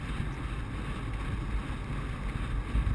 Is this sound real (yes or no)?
yes